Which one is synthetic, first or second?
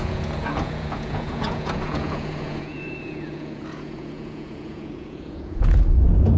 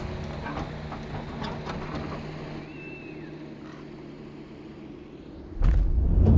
first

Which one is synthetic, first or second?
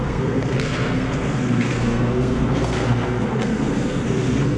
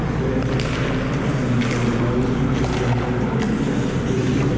first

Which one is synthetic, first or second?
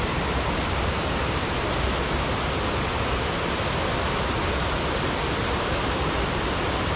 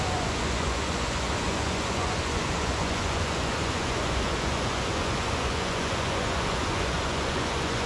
second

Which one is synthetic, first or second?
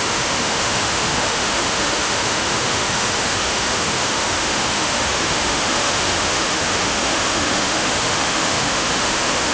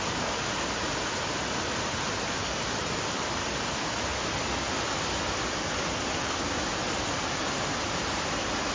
first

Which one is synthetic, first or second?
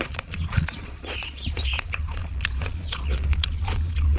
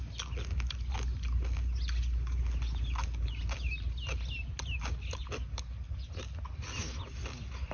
first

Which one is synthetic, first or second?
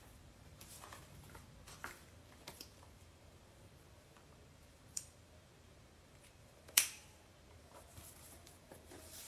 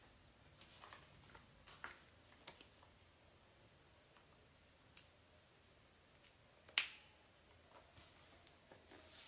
first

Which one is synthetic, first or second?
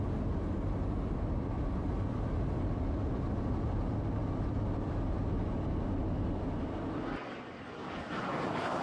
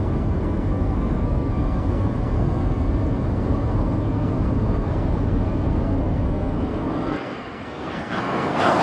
second